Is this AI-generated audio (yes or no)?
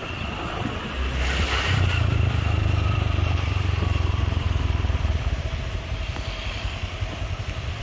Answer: yes